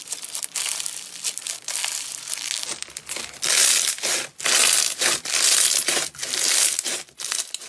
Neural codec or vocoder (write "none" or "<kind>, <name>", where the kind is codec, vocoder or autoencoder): none